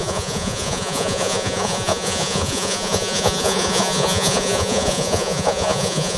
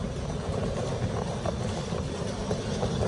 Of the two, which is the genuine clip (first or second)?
second